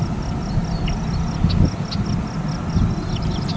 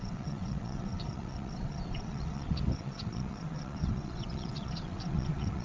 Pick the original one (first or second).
first